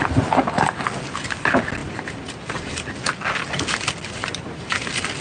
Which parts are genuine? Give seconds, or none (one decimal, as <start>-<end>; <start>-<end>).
0.0-1.8; 2.9-4.2; 4.7-5.2